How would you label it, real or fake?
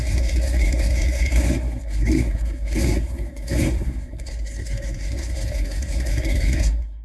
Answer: fake